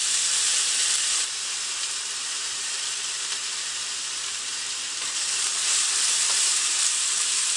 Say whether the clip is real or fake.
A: fake